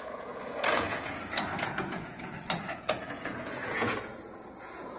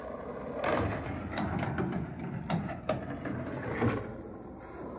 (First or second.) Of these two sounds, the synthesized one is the first